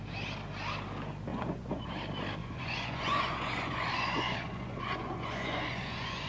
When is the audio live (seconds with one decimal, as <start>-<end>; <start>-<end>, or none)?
0.0-1.3; 1.9-2.4

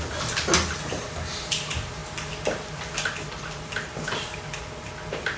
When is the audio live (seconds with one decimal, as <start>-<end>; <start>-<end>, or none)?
0.0-5.4

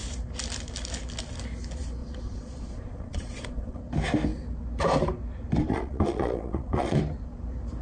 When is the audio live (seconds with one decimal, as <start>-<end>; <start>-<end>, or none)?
0.0-2.0; 3.8-5.7; 7.0-7.8

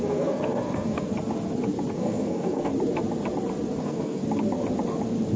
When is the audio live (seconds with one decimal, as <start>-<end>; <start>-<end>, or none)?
1.1-1.9; 2.7-3.8; 4.2-5.4